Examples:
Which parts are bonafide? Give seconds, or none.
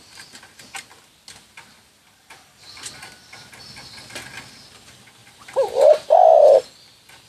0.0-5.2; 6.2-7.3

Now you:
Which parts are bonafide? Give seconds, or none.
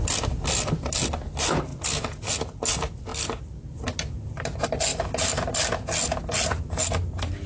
0.0-3.1; 3.6-4.9; 5.6-7.5